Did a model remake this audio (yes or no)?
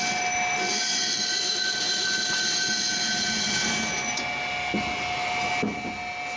no